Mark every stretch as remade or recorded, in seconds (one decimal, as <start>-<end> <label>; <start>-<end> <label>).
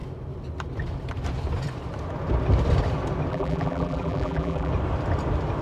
0.0-3.3 recorded; 3.3-4.7 remade; 4.7-5.6 recorded